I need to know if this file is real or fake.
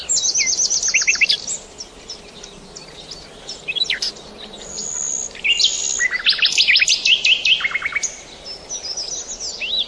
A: real